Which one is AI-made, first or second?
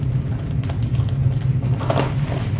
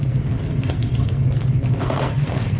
second